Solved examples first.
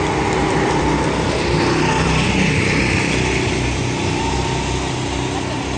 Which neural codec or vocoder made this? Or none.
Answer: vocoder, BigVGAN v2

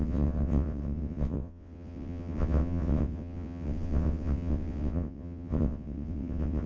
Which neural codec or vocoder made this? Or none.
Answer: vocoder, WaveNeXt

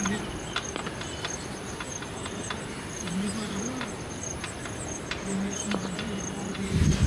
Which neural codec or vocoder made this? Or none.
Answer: vocoder, BigVGAN v2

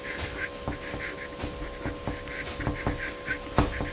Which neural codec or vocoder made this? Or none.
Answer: none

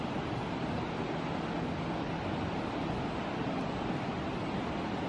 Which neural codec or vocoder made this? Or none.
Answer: none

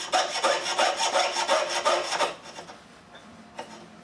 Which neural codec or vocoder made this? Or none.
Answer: none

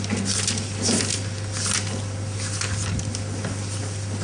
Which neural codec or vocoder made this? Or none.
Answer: none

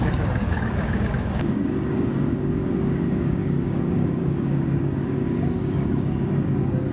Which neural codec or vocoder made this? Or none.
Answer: codec, DAC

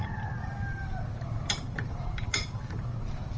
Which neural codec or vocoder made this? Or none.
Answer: vocoder, BigVGAN v2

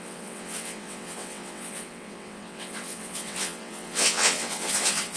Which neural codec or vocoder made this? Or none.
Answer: vocoder, WaveNeXt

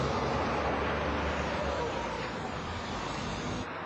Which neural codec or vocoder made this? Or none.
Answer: none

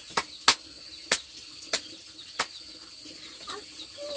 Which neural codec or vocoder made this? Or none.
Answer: none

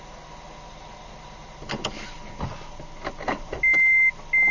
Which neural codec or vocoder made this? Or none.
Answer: none